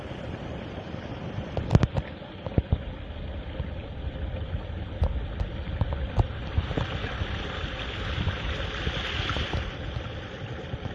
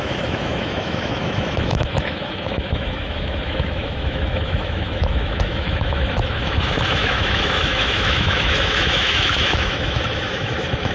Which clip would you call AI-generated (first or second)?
second